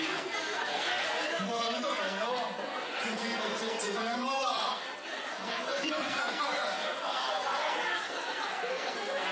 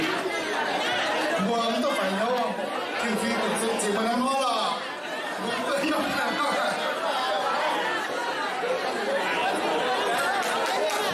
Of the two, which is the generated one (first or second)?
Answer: first